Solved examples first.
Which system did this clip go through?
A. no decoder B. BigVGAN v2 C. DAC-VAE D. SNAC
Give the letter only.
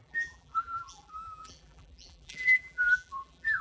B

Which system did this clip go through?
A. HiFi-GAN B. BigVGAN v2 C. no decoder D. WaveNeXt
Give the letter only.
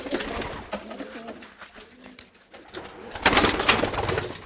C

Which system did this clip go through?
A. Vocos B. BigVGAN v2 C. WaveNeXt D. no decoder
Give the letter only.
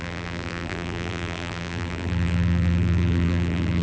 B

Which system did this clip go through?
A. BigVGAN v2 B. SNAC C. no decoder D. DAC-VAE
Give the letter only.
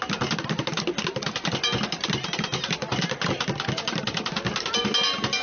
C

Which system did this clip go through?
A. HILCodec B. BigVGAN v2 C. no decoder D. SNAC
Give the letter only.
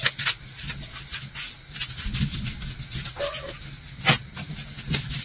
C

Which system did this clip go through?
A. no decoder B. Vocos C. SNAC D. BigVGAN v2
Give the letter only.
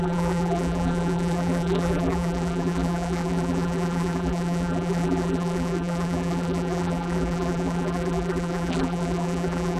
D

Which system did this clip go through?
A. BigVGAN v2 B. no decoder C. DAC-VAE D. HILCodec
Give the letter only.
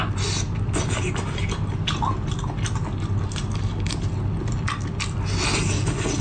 B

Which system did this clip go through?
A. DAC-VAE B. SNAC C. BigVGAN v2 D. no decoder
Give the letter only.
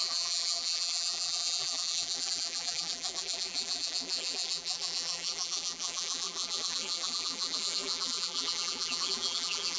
C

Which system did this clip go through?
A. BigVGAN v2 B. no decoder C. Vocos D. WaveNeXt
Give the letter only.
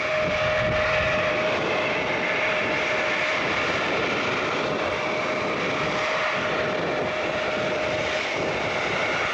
A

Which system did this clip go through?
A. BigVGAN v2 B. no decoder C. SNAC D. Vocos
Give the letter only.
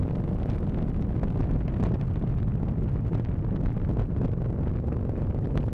B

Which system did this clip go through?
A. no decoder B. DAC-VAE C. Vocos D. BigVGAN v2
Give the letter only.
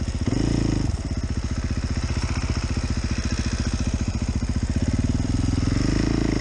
D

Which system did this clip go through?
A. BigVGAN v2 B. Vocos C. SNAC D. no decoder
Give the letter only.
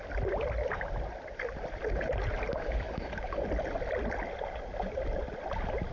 D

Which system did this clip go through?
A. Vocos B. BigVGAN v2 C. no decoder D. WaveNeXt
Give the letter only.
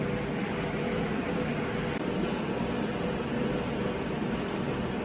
C